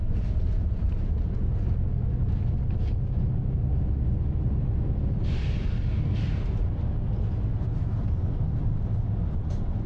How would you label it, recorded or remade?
recorded